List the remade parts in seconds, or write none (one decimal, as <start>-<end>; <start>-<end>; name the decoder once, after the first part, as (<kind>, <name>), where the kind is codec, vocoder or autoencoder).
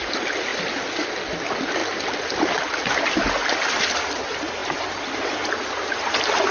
0.0-0.5 (vocoder, BigVGAN v2); 1.1-1.8; 3.6-6.5